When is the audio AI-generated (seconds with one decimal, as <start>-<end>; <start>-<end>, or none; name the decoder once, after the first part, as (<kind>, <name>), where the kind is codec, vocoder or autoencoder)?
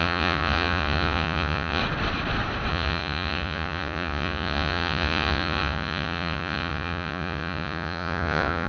0.0-1.8 (vocoder, Vocos); 2.7-8.7